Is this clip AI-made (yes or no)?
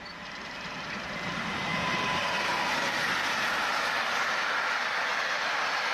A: no